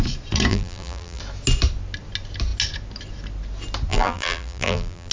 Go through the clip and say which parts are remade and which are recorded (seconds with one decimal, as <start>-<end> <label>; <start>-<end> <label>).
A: 0.0-0.5 recorded; 0.5-1.2 remade; 1.2-3.9 recorded; 3.9-5.1 remade